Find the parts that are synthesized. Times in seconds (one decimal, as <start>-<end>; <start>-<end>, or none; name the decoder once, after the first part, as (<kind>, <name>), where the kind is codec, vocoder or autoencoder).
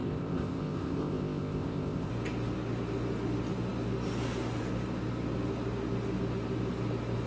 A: 0.0-2.1 (codec, ZipCodec)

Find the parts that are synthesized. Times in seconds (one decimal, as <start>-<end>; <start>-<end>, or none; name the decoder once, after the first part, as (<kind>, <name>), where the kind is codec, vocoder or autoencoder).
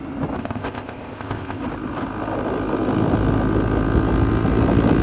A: 0.4-1.6 (codec, ZipCodec)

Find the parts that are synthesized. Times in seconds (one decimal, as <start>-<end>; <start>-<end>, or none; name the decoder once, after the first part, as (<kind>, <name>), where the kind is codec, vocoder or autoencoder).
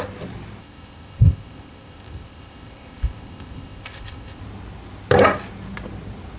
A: 0.6-4.4 (codec, ZipCodec)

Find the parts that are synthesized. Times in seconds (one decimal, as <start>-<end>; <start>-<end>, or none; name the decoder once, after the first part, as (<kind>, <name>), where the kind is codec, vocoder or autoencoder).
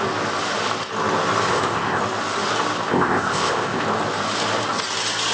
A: 1.5-2.0 (codec, ZipCodec); 2.9-3.8